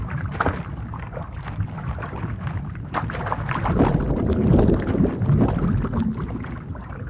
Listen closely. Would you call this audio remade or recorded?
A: recorded